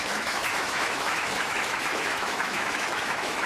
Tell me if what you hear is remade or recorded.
remade